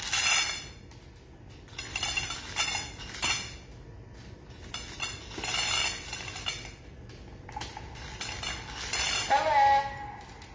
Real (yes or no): yes